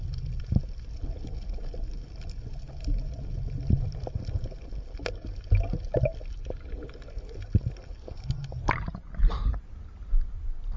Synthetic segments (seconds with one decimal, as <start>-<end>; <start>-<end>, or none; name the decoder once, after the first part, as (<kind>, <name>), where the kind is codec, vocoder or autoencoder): none